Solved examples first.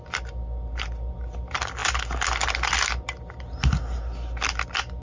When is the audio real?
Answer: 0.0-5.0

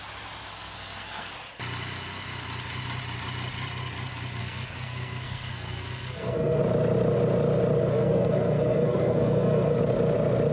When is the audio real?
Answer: 0.0-0.5; 1.3-4.4; 6.6-7.9; 9.8-10.5